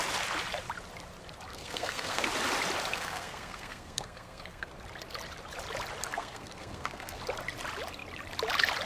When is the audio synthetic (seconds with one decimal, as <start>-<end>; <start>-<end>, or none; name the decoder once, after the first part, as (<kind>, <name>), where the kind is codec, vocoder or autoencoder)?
1.5-2.3 (codec, SNAC); 2.9-4.7; 6.1-7.2